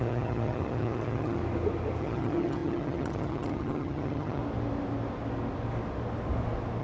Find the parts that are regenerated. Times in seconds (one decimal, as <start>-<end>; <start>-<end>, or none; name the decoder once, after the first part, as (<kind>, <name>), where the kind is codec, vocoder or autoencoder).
0.0-1.4 (vocoder, HiFi-GAN); 2.0-4.4